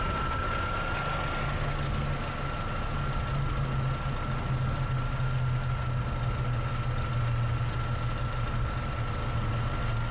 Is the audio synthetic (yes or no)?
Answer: no